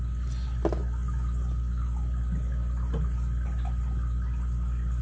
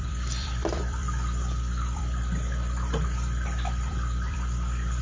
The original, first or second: first